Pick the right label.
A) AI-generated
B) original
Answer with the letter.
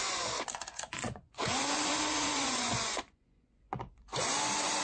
A